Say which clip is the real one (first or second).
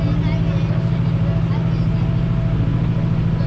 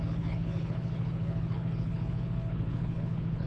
first